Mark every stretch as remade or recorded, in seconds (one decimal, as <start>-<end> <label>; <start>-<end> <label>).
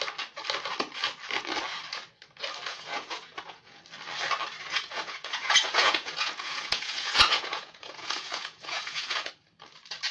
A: 0.0-2.7 recorded; 2.7-3.8 remade; 3.8-4.7 recorded; 4.7-9.3 remade; 9.3-10.1 recorded